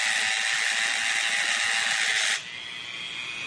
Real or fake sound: real